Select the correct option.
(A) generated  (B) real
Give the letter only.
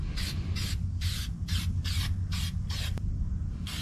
B